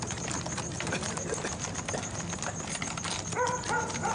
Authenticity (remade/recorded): recorded